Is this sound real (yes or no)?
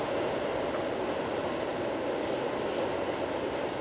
yes